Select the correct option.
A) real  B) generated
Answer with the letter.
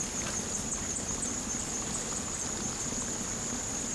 A